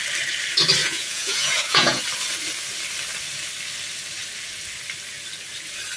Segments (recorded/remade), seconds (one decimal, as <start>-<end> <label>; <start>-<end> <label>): 0.0-0.8 recorded; 0.8-2.0 remade; 2.0-6.0 recorded

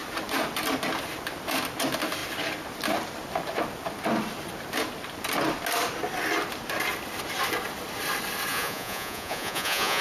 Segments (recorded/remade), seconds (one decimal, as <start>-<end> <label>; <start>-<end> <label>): 0.0-8.5 recorded; 8.5-10.0 remade

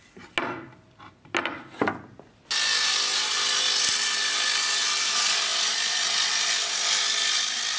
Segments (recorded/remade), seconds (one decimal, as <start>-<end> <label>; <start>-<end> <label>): 0.0-7.8 recorded

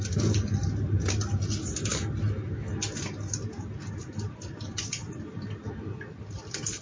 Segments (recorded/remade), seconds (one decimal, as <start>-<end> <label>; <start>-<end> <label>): 0.0-6.8 recorded

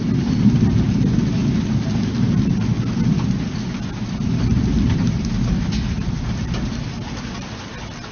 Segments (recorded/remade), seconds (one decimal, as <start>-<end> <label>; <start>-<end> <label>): 0.0-8.1 recorded

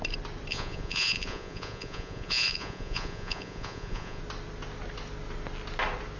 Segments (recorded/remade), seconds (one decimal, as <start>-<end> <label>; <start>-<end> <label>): 0.0-0.5 recorded; 0.5-4.2 remade; 4.2-6.2 recorded

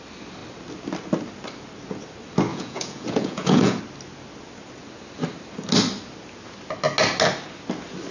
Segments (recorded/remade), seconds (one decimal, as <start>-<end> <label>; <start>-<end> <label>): 0.0-2.5 recorded; 2.5-3.8 remade; 3.8-8.1 recorded